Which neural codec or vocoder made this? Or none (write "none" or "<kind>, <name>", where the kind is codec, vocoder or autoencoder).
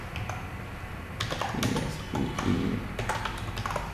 none